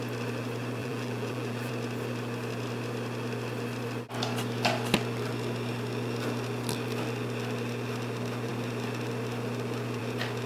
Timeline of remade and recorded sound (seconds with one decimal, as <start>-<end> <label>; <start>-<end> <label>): 0.0-0.8 recorded; 0.8-1.7 remade; 1.7-10.5 recorded